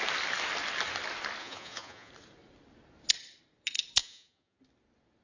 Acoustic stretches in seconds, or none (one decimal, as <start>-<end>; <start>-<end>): 0.0-1.4; 2.1-4.0; 4.6-5.2